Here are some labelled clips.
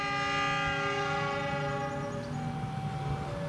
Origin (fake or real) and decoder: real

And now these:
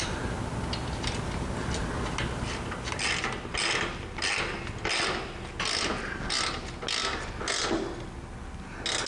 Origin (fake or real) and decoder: real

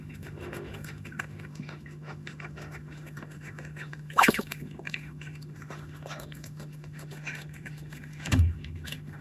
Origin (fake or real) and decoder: fake, autoencoder, DAC-VAE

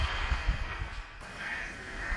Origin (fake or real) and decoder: fake, codec, SNAC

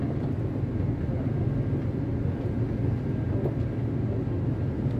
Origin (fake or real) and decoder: real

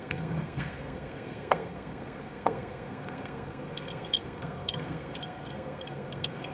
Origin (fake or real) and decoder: fake, codec, SNAC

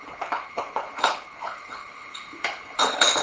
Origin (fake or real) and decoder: fake, codec, HILCodec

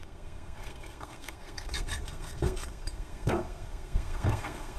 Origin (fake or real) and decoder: fake, codec, SNAC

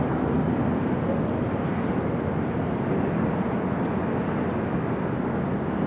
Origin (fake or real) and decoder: real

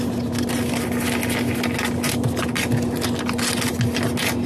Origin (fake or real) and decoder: real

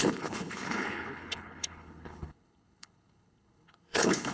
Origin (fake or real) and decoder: fake, codec, HILCodec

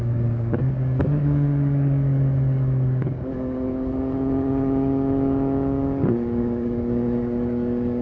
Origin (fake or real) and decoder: fake, codec, DAC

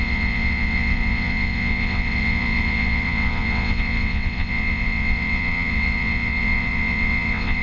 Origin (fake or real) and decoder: fake, vocoder, WaveNeXt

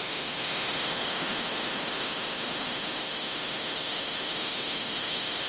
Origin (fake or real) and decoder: fake, autoencoder, DAC-VAE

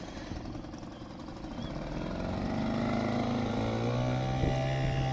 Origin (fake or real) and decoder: real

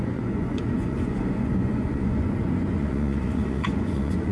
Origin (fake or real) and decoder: fake, vocoder, Vocos